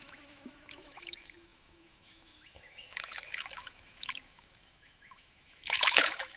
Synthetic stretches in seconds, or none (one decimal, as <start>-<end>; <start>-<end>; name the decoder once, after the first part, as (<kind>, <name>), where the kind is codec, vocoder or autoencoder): 0.0-6.4 (autoencoder, DAC-VAE)